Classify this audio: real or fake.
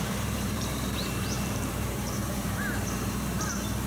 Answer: fake